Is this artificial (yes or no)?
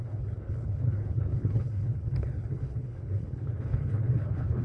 yes